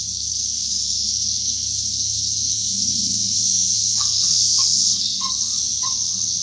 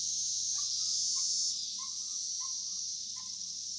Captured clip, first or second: second